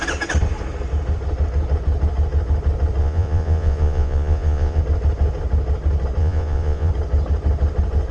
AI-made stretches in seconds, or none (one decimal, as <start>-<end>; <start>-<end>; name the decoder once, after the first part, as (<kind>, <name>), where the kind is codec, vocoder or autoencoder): 3.0-4.8 (vocoder, Vocos); 6.2-6.9